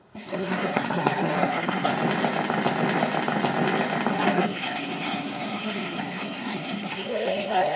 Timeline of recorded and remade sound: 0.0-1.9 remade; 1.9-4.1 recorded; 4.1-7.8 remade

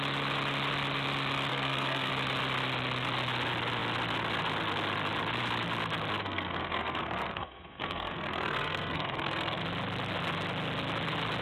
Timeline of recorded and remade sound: 0.0-1.5 recorded; 1.5-2.1 remade; 2.1-6.2 recorded; 6.2-9.6 remade; 9.6-11.4 recorded

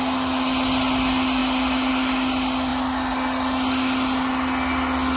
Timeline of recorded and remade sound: 0.0-5.2 recorded

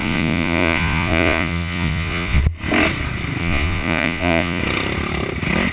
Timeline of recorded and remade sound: 0.0-2.4 remade; 2.4-3.4 recorded; 3.4-4.6 remade; 4.6-5.7 recorded

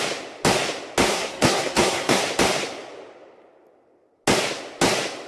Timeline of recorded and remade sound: 0.0-1.1 recorded; 1.1-2.2 remade; 2.2-5.3 recorded

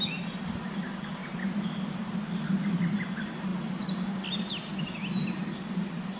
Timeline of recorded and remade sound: 0.0-6.2 recorded

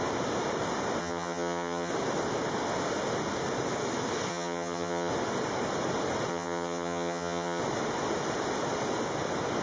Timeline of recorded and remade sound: 0.0-1.0 recorded; 1.0-1.9 remade; 1.9-4.3 recorded; 4.3-5.1 remade; 5.1-6.3 recorded; 6.3-7.6 remade; 7.6-9.6 recorded